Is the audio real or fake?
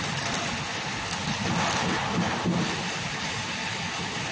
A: real